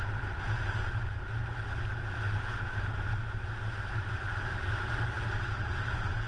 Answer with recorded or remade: recorded